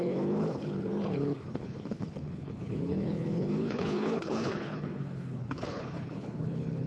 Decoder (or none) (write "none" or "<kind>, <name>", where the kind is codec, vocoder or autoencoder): codec, HILCodec